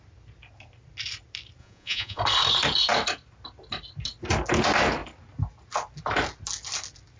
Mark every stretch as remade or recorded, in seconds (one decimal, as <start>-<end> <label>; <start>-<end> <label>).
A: 0.0-1.6 recorded; 1.6-2.2 remade; 2.2-7.2 recorded